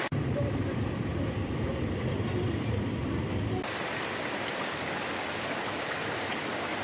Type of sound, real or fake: fake